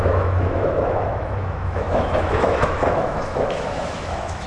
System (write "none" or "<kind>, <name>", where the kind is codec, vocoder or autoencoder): autoencoder, DAC-VAE